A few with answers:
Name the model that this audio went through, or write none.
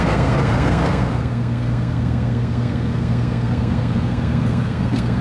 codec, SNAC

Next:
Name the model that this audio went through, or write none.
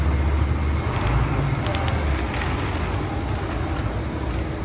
none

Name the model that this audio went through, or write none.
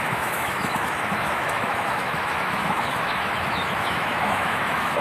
autoencoder, DAC-VAE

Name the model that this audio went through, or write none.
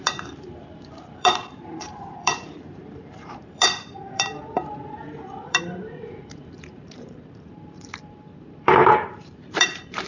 vocoder, BigVGAN v2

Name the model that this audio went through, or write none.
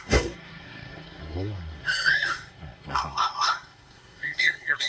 codec, SNAC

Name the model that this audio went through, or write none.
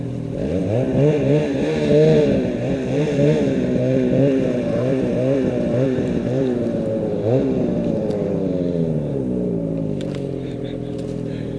vocoder, BigVGAN v2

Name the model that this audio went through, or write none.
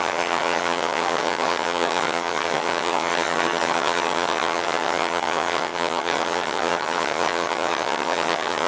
vocoder, HiFi-GAN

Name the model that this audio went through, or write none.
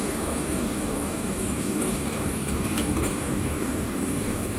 codec, DAC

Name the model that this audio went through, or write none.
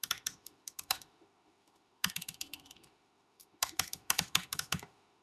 autoencoder, DAC-VAE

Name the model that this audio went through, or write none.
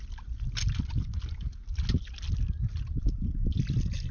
none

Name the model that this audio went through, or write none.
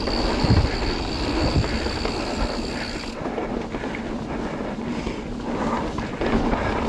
none